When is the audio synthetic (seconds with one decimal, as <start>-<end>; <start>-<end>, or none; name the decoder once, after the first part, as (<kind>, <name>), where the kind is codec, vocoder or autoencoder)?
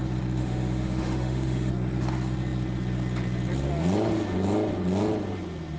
0.4-1.7 (autoencoder, DAC-VAE)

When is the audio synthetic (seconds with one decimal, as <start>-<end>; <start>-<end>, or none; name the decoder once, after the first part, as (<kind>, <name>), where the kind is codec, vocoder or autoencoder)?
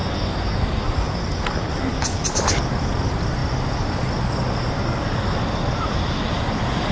none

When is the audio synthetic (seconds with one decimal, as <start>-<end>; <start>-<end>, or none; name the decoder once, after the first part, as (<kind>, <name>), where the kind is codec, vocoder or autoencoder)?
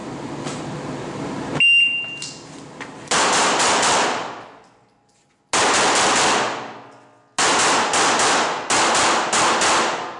none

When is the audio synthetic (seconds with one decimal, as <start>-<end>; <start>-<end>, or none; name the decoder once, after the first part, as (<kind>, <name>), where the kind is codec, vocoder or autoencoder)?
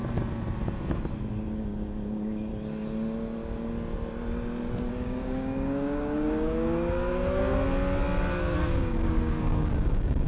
1.4-2.5 (codec, DAC); 4.9-7.4; 8.3-10.3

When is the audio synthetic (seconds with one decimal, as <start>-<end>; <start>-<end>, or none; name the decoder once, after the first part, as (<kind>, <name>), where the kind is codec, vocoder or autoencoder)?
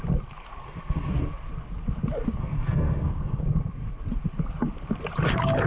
0.6-1.1 (codec, SNAC); 2.4-3.4